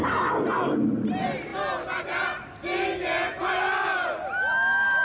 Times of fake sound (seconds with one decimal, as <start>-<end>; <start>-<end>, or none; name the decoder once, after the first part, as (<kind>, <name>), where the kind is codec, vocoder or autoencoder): none